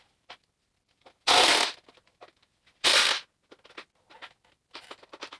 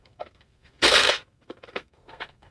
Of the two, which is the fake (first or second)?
second